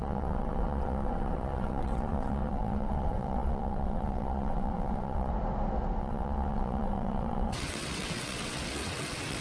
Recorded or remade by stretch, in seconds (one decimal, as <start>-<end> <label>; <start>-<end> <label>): 0.0-5.3 remade; 5.3-6.0 recorded; 6.0-9.4 remade